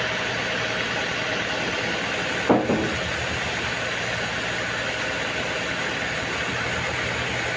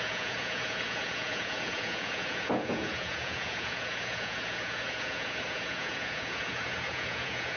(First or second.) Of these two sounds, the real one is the first